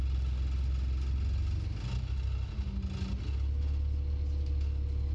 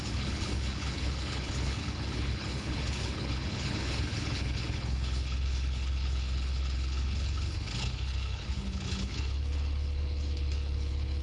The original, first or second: first